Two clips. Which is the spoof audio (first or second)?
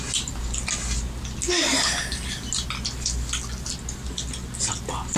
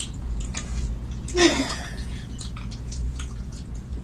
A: second